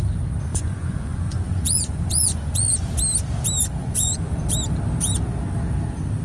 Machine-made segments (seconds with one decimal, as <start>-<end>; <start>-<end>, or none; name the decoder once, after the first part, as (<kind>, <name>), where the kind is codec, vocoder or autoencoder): 0.5-2.9 (vocoder, Vocos); 3.8-4.4